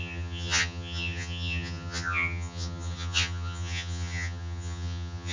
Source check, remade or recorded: remade